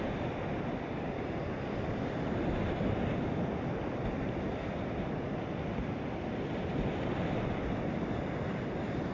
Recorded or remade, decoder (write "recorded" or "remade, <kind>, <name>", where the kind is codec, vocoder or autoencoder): recorded